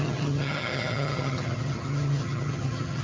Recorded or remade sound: remade